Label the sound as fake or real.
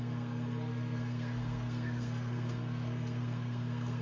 fake